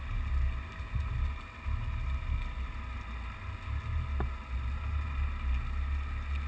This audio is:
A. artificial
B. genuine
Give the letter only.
B